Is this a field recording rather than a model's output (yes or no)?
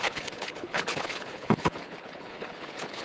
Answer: no